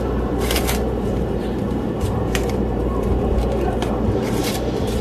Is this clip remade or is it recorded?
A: remade